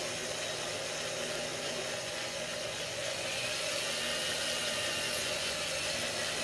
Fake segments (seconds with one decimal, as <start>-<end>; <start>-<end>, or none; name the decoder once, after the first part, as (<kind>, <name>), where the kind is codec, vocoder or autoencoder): 1.5-3.7 (vocoder, Vocos); 4.6-5.9